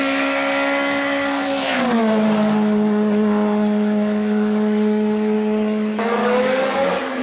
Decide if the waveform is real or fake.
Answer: fake